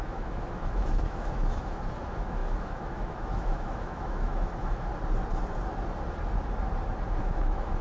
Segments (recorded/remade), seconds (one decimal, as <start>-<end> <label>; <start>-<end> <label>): 0.0-4.9 remade; 4.9-7.2 recorded; 7.2-7.8 remade